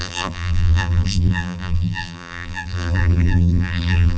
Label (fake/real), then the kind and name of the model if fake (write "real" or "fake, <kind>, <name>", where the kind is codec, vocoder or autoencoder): fake, vocoder, BigVGAN v2